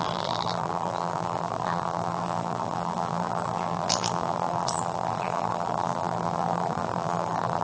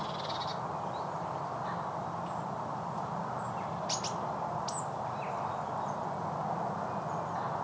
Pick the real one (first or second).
second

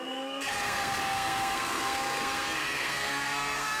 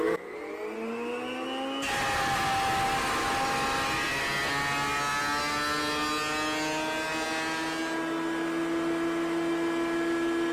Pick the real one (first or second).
second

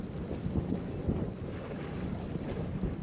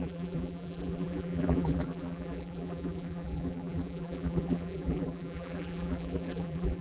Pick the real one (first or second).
first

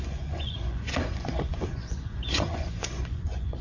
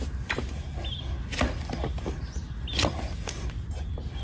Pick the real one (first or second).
second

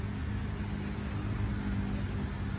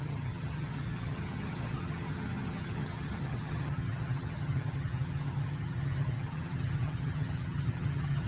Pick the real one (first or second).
first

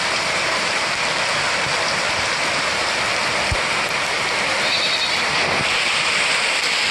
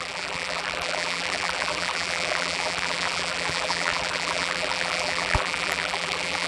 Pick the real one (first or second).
first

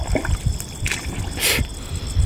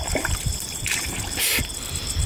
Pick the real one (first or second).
first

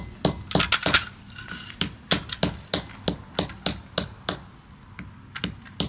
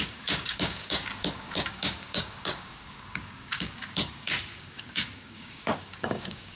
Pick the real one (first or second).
first